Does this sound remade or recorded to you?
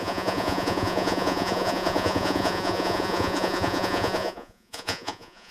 remade